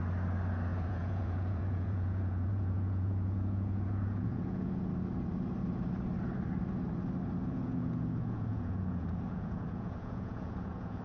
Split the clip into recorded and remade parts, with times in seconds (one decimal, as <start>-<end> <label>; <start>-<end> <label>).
0.0-0.7 recorded; 0.7-4.9 remade; 4.9-7.4 recorded; 7.4-11.0 remade